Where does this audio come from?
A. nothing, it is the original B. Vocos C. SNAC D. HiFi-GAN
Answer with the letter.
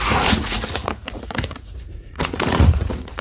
B